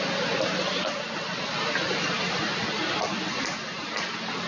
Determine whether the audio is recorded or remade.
recorded